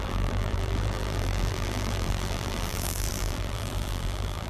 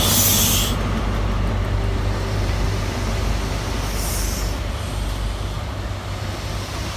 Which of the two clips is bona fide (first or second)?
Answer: second